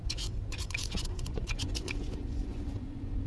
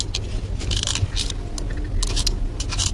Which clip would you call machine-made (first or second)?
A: first